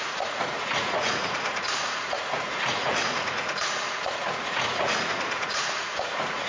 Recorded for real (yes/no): no